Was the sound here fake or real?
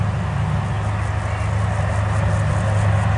real